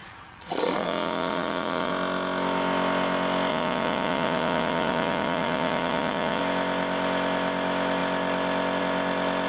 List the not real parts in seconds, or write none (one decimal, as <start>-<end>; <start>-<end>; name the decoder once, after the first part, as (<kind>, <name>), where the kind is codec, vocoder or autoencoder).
0.0-1.9 (vocoder, Vocos); 3.5-6.4